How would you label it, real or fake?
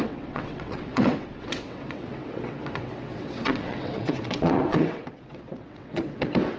fake